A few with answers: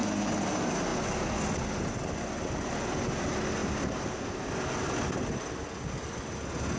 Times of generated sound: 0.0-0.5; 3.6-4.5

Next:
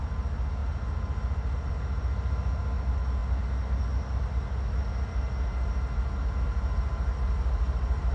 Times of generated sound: none

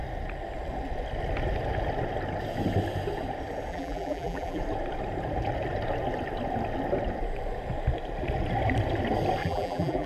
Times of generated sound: 3.7-4.6; 9.4-10.1